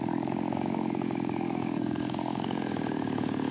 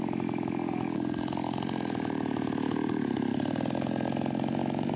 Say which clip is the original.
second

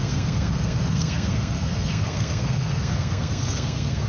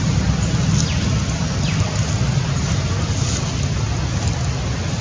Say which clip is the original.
second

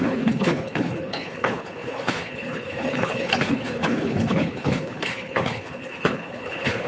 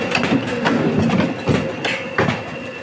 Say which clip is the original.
second